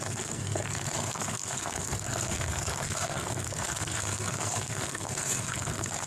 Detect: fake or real fake